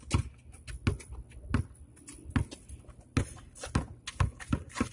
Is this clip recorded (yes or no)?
yes